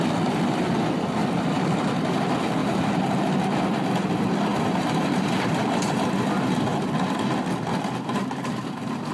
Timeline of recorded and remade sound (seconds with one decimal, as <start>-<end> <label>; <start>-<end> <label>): 0.0-2.6 recorded; 2.6-3.2 remade; 3.2-4.5 recorded; 4.5-6.3 remade; 6.3-9.1 recorded